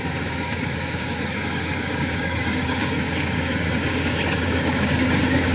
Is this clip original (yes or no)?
no